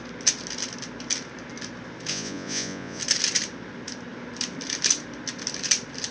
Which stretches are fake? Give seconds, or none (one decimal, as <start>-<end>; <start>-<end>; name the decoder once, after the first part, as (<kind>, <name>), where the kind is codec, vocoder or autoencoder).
2.1-3.0 (vocoder, Vocos)